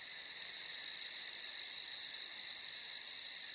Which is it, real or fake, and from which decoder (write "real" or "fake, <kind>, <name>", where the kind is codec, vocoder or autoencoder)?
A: fake, vocoder, BigVGAN v2